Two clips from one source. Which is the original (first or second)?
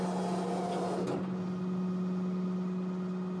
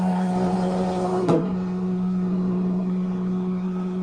first